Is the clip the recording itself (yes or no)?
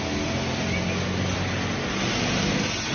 yes